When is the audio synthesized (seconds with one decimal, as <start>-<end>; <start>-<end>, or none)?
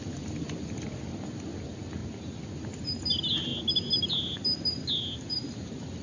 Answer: none